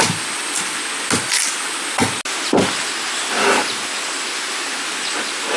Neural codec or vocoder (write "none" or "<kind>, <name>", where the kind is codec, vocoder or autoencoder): none